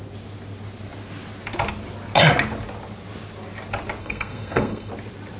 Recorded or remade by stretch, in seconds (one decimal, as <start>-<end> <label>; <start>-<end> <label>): 0.0-4.0 recorded; 4.0-4.9 remade; 4.9-5.4 recorded